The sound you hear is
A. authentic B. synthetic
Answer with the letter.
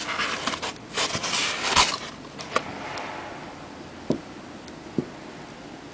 A